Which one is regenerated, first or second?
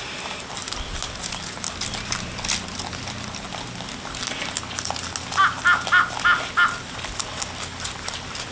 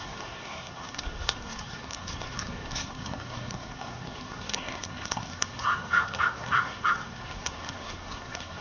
second